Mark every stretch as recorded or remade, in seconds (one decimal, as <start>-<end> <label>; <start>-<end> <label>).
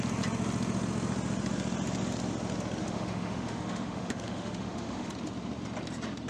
0.0-2.8 recorded; 2.8-5.1 remade; 5.1-6.3 recorded